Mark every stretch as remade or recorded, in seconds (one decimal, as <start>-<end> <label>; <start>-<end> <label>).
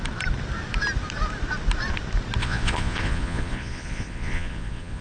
0.0-2.4 recorded; 2.4-5.0 remade